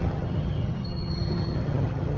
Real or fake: fake